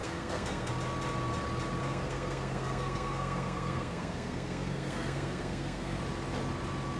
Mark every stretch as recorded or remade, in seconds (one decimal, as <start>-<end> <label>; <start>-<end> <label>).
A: 0.0-0.7 remade; 0.7-1.8 recorded; 1.8-6.0 remade; 6.0-7.0 recorded